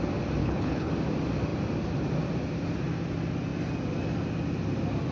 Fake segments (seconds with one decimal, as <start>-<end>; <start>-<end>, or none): 0.4-0.9